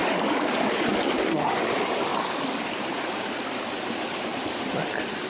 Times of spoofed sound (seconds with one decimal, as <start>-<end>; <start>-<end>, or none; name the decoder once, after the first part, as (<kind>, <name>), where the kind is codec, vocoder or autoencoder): 0.0-2.1 (vocoder, BigVGAN v2); 3.4-5.3